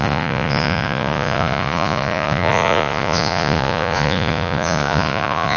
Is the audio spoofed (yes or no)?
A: yes